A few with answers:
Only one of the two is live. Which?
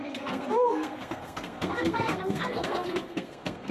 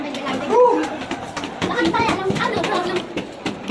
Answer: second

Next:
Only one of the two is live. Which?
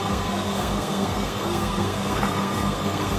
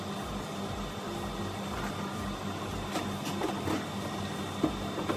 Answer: second